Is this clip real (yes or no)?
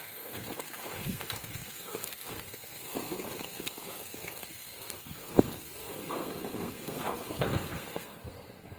no